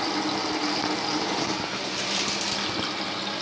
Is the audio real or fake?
real